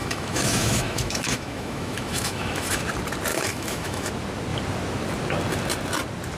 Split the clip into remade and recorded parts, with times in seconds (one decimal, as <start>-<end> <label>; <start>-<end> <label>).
0.0-2.8 remade; 2.8-3.3 recorded; 3.3-4.1 remade; 4.1-6.4 recorded